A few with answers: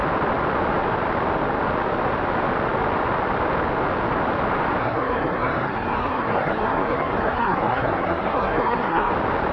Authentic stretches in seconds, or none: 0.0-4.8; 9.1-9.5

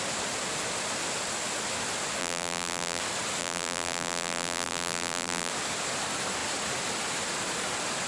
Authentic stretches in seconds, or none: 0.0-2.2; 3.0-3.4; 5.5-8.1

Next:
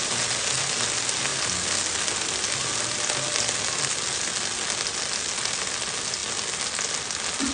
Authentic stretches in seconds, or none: 0.0-7.5

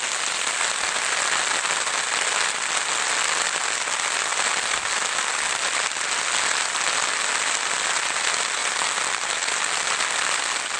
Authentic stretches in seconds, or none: 0.0-8.6; 9.5-10.8

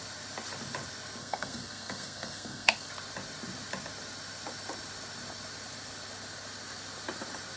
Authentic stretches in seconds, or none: 0.0-1.2; 2.9-7.6